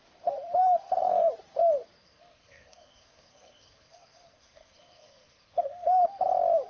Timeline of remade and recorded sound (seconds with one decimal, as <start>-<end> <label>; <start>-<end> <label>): 0.0-0.6 recorded; 0.6-1.3 remade; 1.3-2.0 recorded; 2.0-6.0 remade; 6.0-6.7 recorded